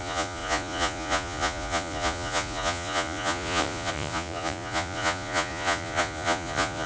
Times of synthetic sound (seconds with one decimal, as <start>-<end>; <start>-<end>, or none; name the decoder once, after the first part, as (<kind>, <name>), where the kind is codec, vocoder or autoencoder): 0.0-6.9 (vocoder, Vocos)